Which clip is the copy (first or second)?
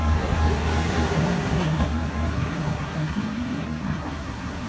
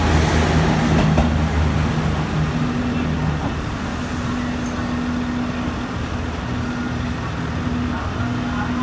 first